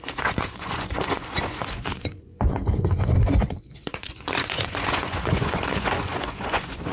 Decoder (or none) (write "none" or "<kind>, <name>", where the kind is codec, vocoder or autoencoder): vocoder, Vocos